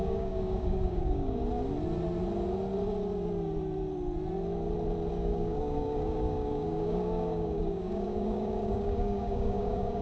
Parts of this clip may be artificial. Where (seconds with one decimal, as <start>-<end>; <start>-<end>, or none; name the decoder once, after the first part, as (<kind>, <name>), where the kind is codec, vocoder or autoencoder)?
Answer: 0.0-1.4 (codec, DAC); 5.1-10.0